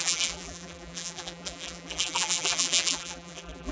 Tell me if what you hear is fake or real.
fake